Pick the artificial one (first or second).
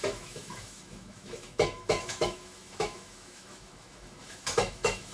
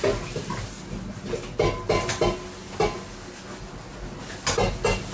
first